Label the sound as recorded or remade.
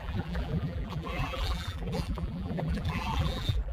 remade